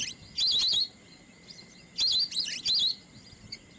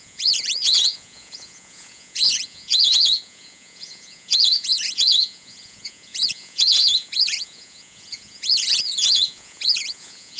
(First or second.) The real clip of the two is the first